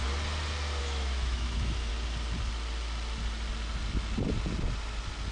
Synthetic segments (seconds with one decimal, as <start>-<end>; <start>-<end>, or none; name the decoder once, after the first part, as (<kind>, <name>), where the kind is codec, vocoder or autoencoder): 0.8-1.9 (autoencoder, DAC-VAE)

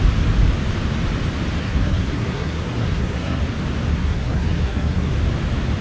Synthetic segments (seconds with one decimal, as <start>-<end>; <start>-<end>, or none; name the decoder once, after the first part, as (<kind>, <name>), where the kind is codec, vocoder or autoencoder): 1.6-3.4 (codec, SNAC); 3.9-5.1

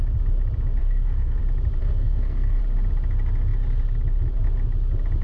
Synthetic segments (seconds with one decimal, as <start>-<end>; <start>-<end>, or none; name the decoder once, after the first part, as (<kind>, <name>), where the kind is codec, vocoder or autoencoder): 0.8-1.4 (codec, SNAC); 1.8-2.6

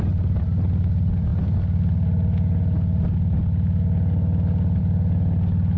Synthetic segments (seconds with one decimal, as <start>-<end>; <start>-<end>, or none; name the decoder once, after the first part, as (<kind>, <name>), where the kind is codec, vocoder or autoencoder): none